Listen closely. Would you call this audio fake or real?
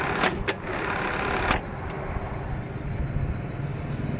real